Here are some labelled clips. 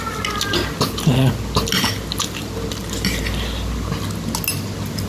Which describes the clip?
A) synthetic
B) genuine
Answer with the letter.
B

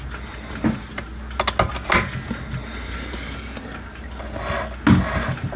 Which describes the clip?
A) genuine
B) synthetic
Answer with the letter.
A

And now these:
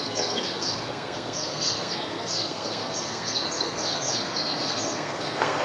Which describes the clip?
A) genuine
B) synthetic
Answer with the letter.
B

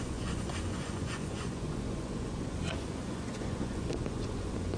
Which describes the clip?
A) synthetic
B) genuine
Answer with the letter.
A